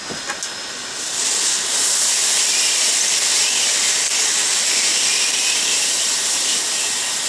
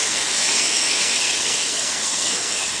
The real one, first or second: first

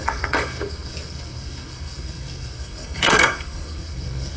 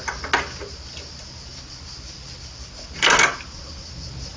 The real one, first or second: second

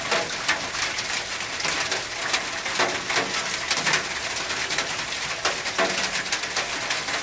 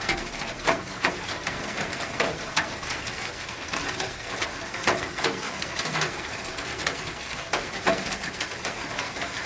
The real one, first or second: first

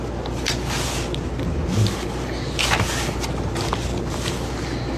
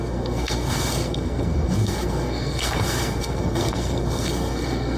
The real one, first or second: first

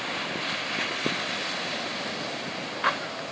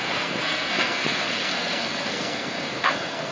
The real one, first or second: first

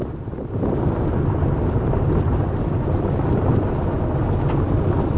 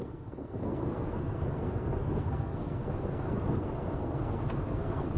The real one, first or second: first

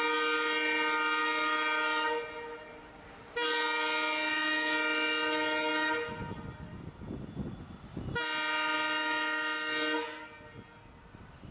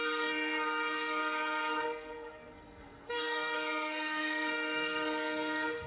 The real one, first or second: first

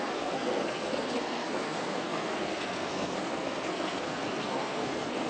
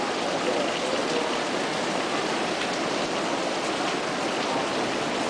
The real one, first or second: second